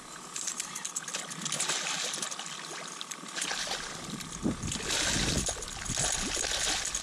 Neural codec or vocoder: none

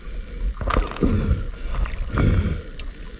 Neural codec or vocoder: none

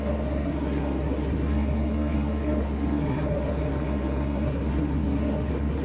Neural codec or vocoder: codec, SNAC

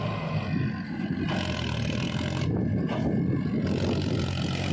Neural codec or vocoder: none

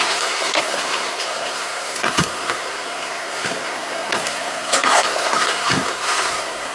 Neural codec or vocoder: codec, SNAC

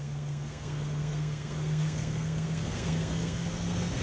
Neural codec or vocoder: codec, SNAC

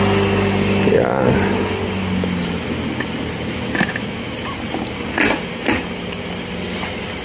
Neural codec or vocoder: none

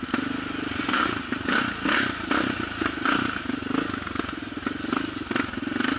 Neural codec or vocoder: none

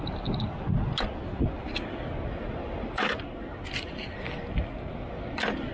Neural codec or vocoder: none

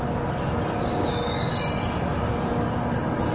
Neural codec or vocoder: none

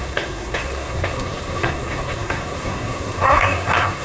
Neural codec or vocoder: codec, SNAC